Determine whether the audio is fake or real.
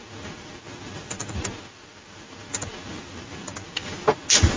real